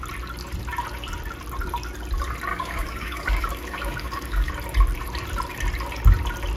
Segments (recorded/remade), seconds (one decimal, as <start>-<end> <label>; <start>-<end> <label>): 0.0-2.5 recorded; 2.5-4.5 remade; 4.5-6.6 recorded